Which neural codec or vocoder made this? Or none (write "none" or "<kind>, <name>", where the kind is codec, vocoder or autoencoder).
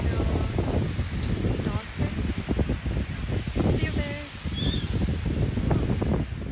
none